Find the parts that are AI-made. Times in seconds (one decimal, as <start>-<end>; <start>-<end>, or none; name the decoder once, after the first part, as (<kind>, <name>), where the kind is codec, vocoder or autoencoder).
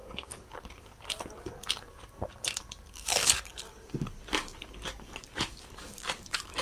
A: 0.0-6.6 (codec, DAC)